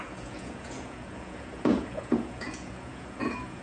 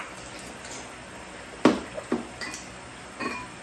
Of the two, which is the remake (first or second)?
first